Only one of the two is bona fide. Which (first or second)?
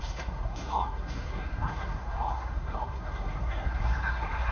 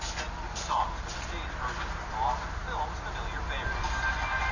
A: second